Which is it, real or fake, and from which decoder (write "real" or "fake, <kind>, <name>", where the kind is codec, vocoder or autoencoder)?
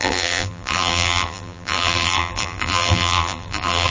fake, vocoder, BigVGAN v2